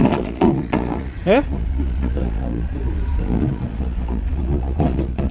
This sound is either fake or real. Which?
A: fake